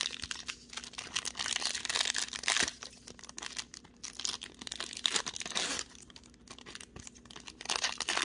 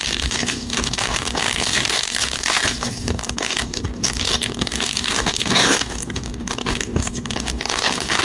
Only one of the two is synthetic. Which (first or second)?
second